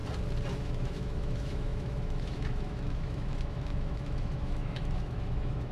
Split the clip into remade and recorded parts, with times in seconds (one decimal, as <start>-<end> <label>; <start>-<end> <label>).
0.0-0.5 recorded; 0.5-5.7 remade